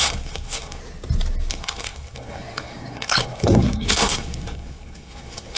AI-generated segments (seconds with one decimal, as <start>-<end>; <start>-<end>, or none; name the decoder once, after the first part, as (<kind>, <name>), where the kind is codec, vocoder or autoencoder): 0.0-0.8 (codec, SNAC); 1.5-5.6